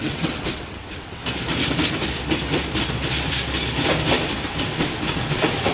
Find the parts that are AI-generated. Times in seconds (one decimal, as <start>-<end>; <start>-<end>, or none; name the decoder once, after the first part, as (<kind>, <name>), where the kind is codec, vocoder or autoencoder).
0.0-1.2 (vocoder, WaveNeXt); 4.6-5.7